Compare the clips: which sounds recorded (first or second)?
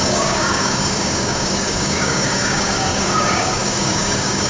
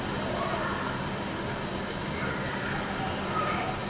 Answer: second